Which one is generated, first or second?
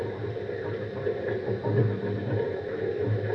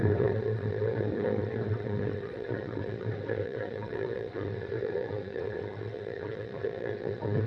second